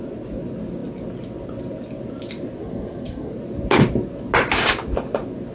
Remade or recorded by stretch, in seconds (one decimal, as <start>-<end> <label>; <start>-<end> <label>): 0.0-2.6 recorded; 2.6-3.3 remade; 3.3-5.5 recorded